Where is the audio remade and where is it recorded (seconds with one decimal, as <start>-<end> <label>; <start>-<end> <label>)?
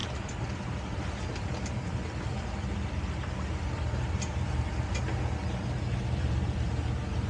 0.0-5.0 remade; 5.0-5.6 recorded; 5.6-7.3 remade